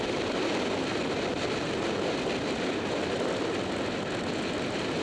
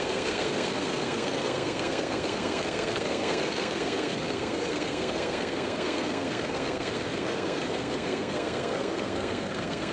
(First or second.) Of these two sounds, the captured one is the first